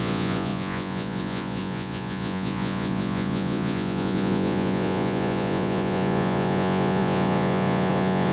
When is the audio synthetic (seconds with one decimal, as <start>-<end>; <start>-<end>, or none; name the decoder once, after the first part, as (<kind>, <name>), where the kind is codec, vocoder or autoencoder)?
0.0-8.3 (vocoder, Vocos)

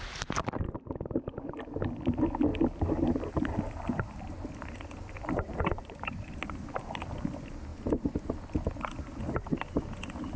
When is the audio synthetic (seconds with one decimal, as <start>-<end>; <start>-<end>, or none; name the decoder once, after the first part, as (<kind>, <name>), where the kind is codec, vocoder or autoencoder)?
none

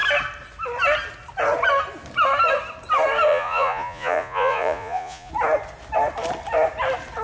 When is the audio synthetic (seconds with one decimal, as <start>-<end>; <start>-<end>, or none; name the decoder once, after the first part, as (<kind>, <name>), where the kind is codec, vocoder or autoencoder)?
3.3-5.3 (vocoder, Vocos)

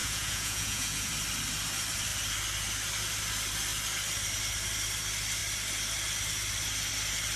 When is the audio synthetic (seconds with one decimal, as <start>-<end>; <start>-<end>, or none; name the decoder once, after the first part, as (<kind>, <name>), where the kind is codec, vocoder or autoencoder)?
0.0-1.1 (vocoder, Vocos)